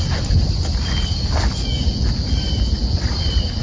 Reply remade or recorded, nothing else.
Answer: recorded